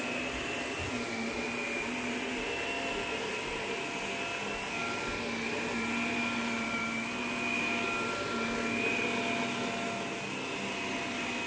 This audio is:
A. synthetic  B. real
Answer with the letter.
B